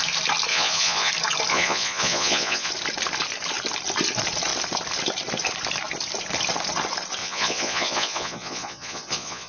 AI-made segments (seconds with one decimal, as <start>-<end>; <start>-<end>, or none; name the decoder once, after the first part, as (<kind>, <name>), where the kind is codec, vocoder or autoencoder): 0.5-1.1 (vocoder, Vocos); 1.5-2.7; 7.2-9.5